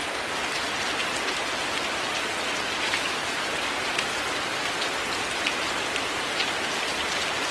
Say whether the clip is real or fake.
fake